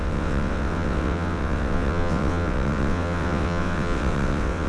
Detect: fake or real fake